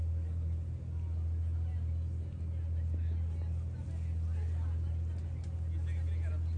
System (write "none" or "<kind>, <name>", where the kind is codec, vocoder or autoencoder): none